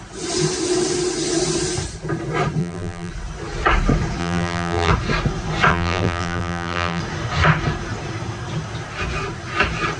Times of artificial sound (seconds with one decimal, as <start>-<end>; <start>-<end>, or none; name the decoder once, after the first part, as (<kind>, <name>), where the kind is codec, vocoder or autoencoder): 2.6-3.1 (vocoder, BigVGAN v2); 4.2-4.9; 5.7-7.0